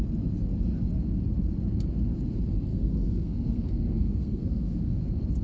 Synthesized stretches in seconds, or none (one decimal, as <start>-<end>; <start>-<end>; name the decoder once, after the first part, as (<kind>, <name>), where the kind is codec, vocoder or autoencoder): 2.7-5.0 (codec, SNAC)

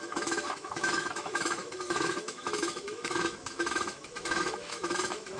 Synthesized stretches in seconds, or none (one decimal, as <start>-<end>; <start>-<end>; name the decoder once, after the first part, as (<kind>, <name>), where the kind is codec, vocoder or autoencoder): 0.0-5.4 (autoencoder, DAC-VAE)

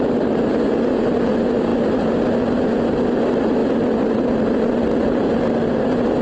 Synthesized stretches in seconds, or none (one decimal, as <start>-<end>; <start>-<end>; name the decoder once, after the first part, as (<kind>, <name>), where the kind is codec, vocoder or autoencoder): none